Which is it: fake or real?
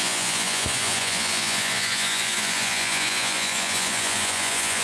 fake